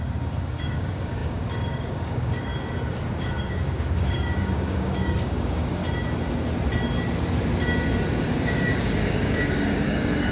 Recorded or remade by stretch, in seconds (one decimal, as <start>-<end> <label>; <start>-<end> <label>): 0.0-2.5 remade; 2.5-3.1 recorded; 3.1-5.8 remade; 5.8-8.2 recorded; 8.2-10.3 remade